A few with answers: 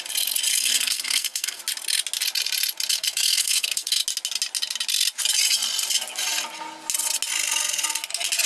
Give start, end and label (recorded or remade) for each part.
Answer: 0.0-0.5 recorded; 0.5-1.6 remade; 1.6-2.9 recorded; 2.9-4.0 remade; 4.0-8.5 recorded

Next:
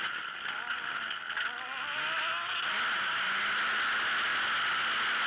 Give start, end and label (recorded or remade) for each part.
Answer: 0.0-5.3 recorded

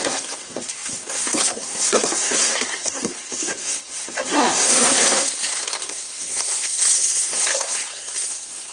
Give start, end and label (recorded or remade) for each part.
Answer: 0.0-8.7 remade

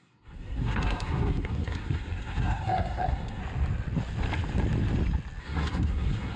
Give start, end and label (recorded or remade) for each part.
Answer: 0.0-3.4 remade; 3.4-5.4 recorded; 5.4-6.4 remade